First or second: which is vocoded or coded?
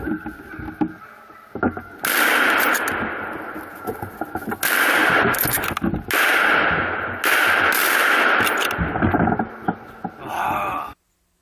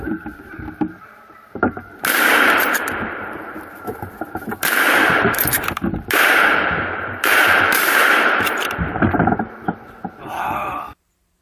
second